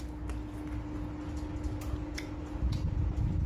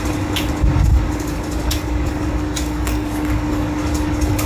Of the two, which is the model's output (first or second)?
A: second